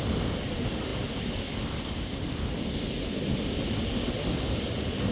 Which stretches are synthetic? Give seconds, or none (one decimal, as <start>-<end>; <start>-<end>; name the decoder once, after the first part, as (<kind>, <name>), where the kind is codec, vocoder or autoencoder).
none